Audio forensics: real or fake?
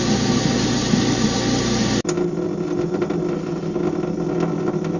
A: real